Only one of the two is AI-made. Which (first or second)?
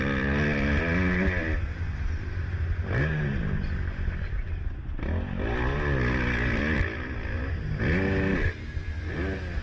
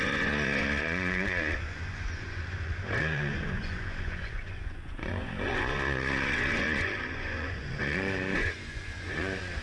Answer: second